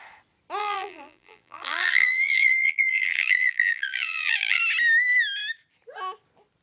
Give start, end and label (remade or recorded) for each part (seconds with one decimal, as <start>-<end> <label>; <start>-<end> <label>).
0.0-0.6 recorded; 0.6-4.6 remade; 4.6-6.6 recorded